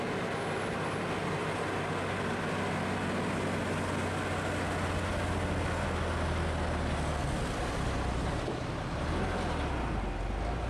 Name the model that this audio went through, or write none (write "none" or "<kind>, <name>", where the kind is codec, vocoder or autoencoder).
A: none